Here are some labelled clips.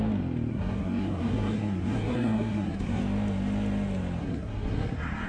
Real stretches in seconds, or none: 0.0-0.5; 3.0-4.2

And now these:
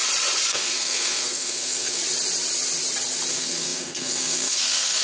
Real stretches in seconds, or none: 0.0-0.5; 2.0-3.3

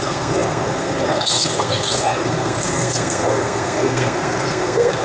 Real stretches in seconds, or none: none